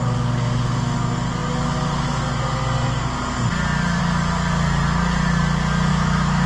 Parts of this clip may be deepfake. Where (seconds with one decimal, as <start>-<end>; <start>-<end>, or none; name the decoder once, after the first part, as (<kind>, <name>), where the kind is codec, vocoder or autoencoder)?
5.9-6.5 (autoencoder, DAC-VAE)